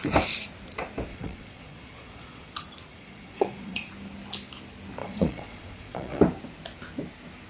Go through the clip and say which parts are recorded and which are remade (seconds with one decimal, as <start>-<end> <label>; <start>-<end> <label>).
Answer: 0.0-1.1 recorded; 1.1-2.5 remade; 2.5-2.9 recorded; 2.9-3.9 remade; 3.9-5.0 recorded; 5.0-6.2 remade; 6.2-7.5 recorded